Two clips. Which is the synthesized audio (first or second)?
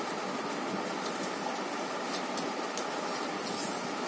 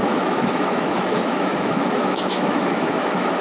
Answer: second